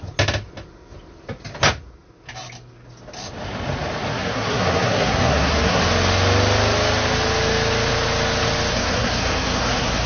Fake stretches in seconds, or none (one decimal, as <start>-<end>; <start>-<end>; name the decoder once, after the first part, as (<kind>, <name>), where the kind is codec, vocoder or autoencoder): 4.1-5.8 (codec, SNAC); 8.7-10.1